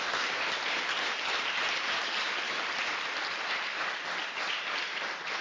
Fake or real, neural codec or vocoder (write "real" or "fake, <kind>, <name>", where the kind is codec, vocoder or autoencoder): real